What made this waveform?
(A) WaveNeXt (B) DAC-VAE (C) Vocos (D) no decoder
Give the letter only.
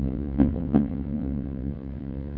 A